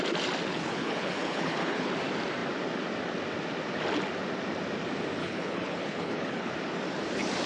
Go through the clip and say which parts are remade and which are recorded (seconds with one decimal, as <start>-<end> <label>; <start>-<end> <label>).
0.0-0.5 recorded; 0.5-1.9 remade; 1.9-5.2 recorded; 5.2-6.5 remade; 6.5-7.5 recorded